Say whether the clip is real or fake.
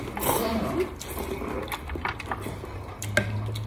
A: real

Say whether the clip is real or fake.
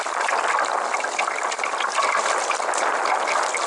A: real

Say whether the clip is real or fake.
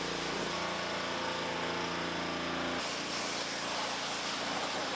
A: real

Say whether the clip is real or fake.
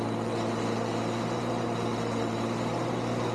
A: real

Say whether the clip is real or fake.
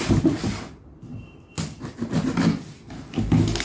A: real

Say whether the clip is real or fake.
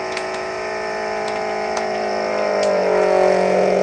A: fake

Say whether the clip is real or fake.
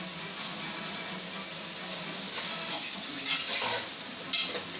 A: real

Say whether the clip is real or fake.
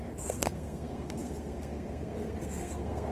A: fake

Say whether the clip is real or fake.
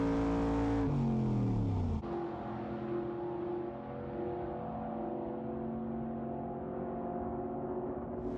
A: real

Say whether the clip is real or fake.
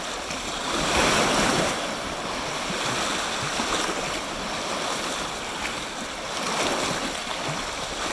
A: real